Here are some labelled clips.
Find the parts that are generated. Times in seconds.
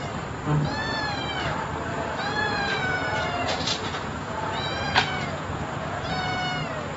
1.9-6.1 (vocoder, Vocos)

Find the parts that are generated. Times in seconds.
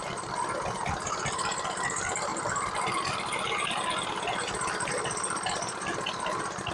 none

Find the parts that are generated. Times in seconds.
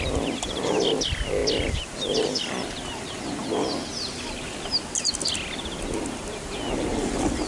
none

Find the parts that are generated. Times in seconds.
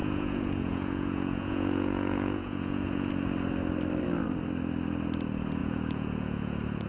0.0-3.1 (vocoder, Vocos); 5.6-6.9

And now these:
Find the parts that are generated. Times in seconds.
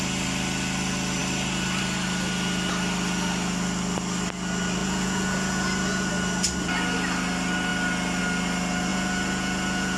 4.8-6.1 (vocoder, Vocos); 8.9-10.0